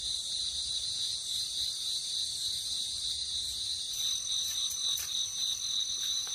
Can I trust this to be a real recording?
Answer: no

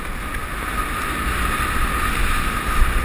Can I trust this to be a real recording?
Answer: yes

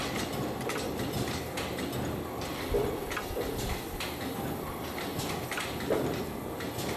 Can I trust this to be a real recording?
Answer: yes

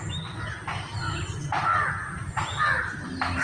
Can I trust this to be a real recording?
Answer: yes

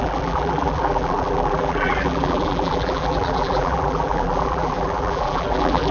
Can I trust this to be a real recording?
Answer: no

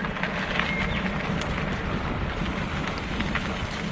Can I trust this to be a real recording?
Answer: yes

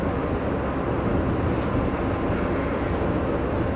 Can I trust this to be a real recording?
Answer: yes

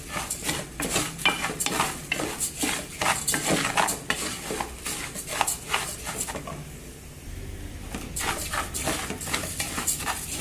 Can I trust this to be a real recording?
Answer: yes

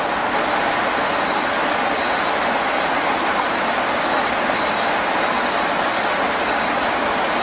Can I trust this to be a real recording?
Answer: yes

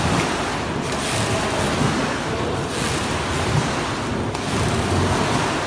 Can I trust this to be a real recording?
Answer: yes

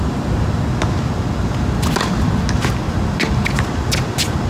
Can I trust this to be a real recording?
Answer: yes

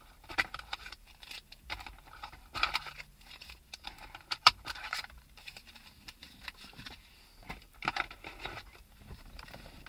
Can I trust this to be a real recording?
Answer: no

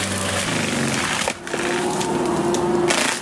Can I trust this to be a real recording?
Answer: yes